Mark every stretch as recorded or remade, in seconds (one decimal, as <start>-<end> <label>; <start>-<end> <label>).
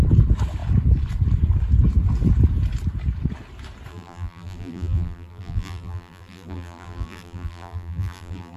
0.0-3.9 recorded; 3.9-8.6 remade